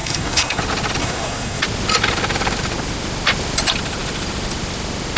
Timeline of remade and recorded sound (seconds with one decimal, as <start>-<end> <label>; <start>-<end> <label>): 0.0-0.6 remade; 0.6-1.0 recorded; 1.0-1.6 remade; 1.6-5.2 recorded